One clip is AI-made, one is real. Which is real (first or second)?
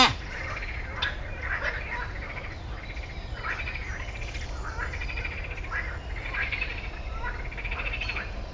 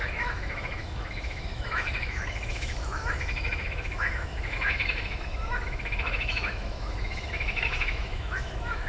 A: first